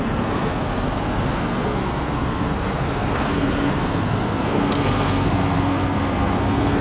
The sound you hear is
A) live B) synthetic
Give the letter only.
B